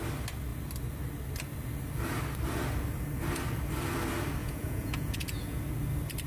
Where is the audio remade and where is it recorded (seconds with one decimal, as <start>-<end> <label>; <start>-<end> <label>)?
0.0-4.4 recorded; 4.4-5.6 remade; 5.6-6.3 recorded